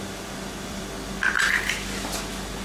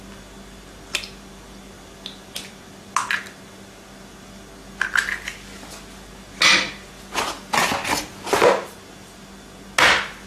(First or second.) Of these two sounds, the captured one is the second